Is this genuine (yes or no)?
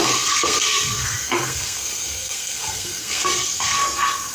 no